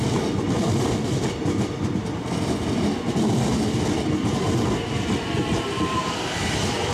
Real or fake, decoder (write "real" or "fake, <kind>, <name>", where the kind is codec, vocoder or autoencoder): real